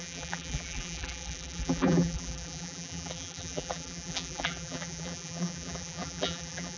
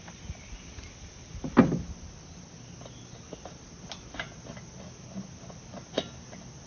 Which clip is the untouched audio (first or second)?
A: second